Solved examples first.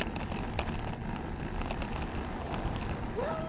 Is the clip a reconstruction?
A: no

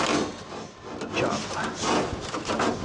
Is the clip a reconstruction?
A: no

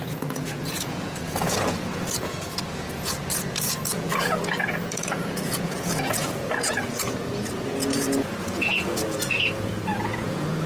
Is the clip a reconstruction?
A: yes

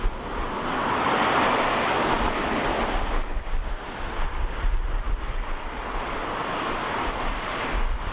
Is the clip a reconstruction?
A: no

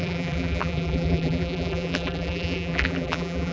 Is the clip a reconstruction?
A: yes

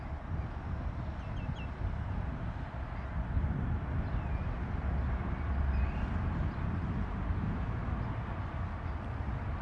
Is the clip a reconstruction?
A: no